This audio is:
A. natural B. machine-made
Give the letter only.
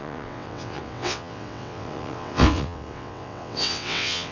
B